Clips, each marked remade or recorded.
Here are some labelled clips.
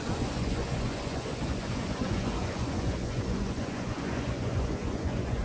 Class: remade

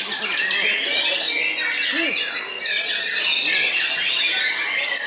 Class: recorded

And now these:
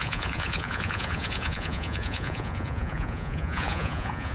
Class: remade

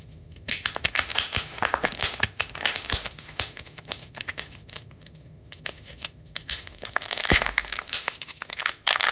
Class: remade